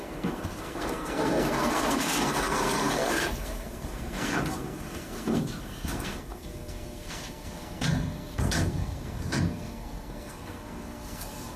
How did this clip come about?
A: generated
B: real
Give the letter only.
A